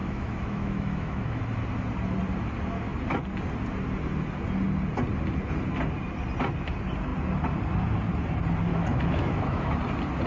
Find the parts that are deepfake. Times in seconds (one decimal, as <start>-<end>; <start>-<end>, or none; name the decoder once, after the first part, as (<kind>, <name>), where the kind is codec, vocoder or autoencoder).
0.0-1.4 (autoencoder, DAC-VAE); 8.7-9.7